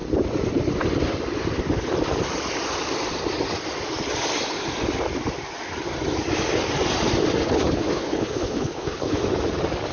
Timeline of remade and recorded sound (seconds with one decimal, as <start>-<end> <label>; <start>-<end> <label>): 0.0-7.4 recorded; 7.4-9.2 remade; 9.2-9.9 recorded